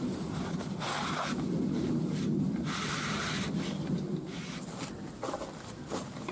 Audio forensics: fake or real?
real